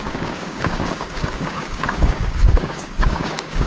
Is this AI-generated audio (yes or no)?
yes